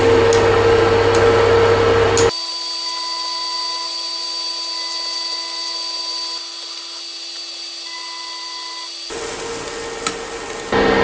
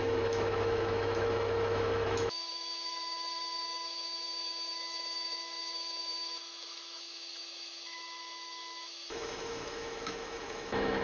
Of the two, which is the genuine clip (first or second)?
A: first